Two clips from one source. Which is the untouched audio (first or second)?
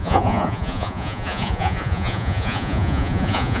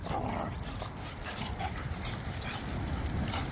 second